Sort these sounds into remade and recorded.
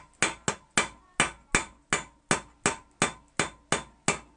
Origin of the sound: recorded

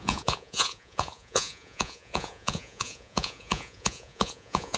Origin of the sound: remade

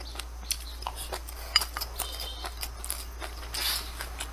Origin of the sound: recorded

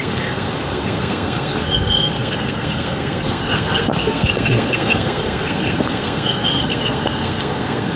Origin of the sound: remade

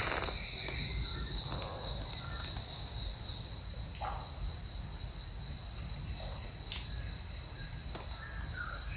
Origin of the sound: recorded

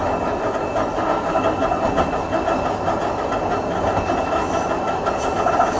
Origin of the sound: recorded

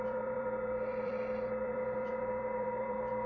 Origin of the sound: remade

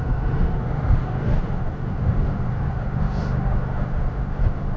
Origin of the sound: remade